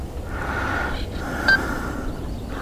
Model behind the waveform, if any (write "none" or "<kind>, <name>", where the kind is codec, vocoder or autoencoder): vocoder, BigVGAN v2